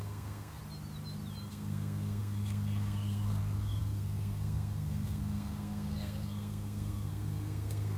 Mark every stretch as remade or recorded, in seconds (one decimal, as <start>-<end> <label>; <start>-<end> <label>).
0.0-0.6 remade; 0.6-1.5 recorded; 1.5-8.0 remade